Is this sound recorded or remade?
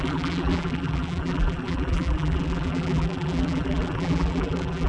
remade